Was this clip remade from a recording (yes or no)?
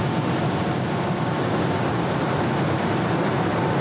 no